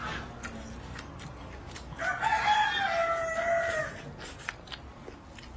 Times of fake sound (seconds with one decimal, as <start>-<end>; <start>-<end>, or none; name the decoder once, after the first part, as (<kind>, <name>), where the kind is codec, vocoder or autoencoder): none